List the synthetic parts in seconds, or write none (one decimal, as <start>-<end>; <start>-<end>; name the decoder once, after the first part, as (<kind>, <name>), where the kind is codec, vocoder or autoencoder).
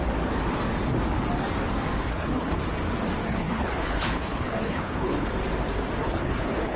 2.0-2.6 (codec, HILCodec); 3.3-5.3; 6.0-6.8